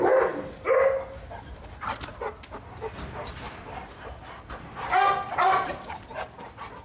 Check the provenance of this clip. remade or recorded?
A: recorded